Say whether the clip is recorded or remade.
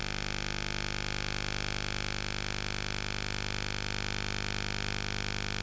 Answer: recorded